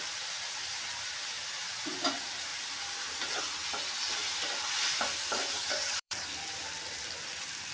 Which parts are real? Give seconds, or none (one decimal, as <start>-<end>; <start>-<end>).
0.0-4.2